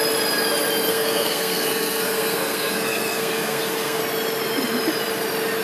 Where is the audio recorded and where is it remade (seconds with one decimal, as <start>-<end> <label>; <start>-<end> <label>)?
0.0-0.9 recorded; 0.9-4.0 remade; 4.0-5.6 recorded

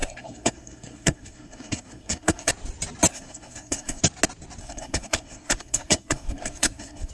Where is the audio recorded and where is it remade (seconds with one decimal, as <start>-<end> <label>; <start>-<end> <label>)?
0.0-2.5 remade; 2.5-3.1 recorded; 3.1-4.0 remade; 4.0-4.6 recorded; 4.6-7.1 remade

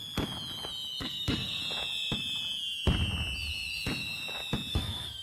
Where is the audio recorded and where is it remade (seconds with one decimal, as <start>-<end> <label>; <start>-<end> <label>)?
0.0-1.0 recorded; 1.0-1.6 remade; 1.6-4.7 recorded; 4.7-5.2 remade

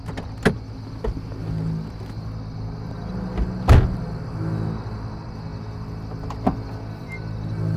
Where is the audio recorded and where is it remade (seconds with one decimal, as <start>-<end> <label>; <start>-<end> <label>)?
0.0-7.8 recorded

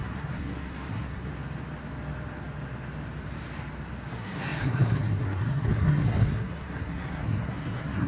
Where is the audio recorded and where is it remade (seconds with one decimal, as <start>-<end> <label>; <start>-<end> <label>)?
0.0-1.3 remade; 1.3-4.1 recorded; 4.1-8.1 remade

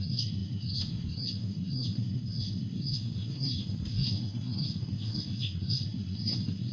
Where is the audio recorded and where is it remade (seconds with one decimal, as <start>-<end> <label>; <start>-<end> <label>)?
0.0-6.7 remade

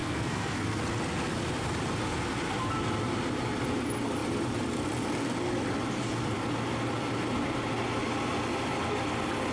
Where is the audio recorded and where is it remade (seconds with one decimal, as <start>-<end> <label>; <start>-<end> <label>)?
0.0-0.8 remade; 0.8-9.5 recorded